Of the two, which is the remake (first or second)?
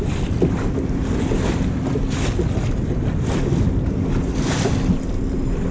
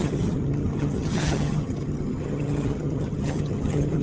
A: second